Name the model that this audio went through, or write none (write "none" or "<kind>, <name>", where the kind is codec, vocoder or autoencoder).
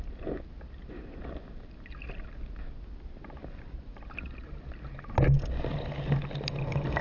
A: none